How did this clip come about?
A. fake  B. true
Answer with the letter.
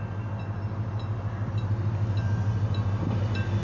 B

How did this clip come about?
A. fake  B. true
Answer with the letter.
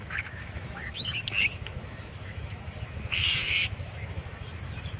A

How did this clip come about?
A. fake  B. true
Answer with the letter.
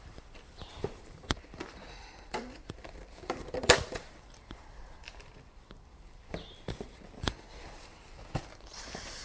A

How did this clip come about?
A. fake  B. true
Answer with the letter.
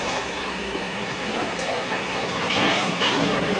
A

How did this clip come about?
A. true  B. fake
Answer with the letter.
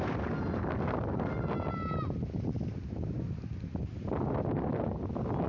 A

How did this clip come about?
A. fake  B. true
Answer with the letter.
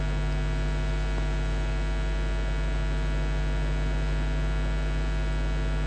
B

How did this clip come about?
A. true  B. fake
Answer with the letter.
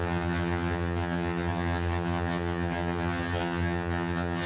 B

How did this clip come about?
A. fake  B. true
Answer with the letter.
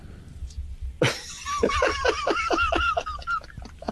B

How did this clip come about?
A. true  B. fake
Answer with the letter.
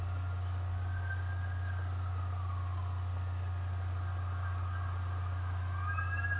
A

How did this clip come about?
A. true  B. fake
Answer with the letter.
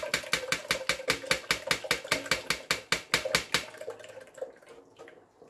A